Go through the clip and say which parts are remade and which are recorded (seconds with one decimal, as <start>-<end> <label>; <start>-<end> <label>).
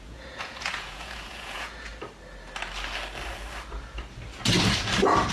0.0-1.9 remade; 1.9-5.3 recorded